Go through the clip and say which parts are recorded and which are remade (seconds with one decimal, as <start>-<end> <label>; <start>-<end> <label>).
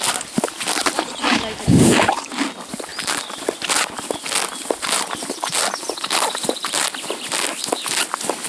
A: 0.0-8.5 recorded